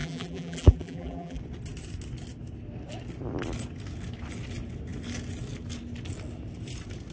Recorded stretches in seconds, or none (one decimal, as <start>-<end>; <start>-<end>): 1.4-7.1